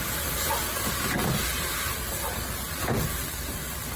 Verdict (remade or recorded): recorded